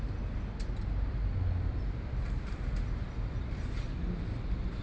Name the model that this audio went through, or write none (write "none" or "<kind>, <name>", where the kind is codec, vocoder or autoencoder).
none